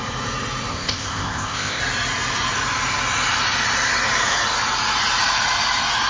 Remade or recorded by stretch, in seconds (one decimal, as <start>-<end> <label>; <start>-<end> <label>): 0.0-0.7 recorded; 0.7-1.8 remade; 1.8-6.1 recorded